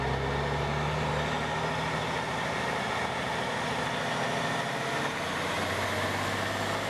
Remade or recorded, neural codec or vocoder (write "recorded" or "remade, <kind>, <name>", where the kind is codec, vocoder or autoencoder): recorded